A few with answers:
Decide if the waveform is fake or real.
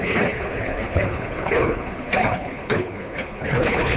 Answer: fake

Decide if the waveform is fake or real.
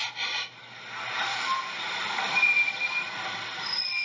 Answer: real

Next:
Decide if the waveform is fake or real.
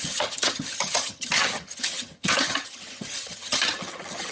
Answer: fake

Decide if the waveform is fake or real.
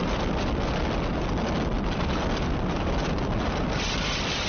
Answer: real